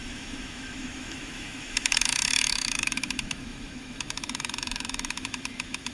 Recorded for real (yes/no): no